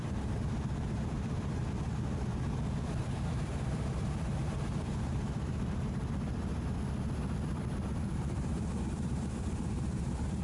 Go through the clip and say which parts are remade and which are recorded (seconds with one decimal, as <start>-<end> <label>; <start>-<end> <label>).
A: 0.0-1.6 remade; 1.6-3.0 recorded; 3.0-6.0 remade; 6.0-7.9 recorded; 7.9-10.4 remade